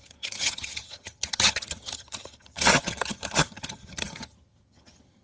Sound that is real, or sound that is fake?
fake